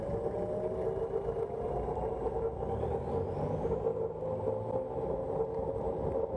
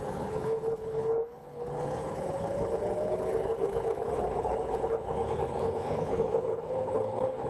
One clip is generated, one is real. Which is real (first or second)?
first